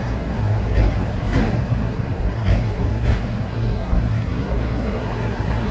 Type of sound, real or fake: fake